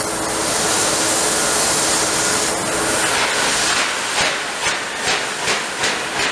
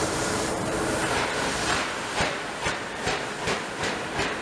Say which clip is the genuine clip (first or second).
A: first